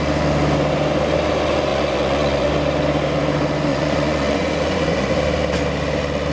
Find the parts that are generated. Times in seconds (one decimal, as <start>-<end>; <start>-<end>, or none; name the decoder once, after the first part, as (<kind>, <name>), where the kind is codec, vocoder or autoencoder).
1.7-2.5 (vocoder, Vocos); 3.7-5.1